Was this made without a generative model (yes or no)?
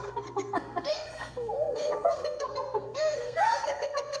no